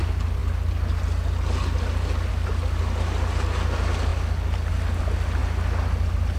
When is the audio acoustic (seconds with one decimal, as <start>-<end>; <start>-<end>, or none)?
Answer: 0.0-6.4